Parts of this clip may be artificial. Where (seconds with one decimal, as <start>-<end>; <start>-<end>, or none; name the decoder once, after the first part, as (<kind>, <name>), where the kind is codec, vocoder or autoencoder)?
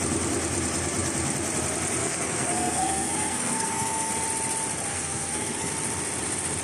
2.0-4.1 (codec, SNAC); 4.9-5.7